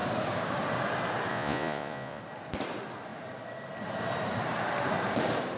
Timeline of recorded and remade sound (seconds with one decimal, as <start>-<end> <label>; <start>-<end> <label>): 0.0-1.3 recorded; 1.3-2.2 remade; 2.2-5.6 recorded